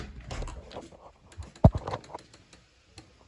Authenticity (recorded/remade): recorded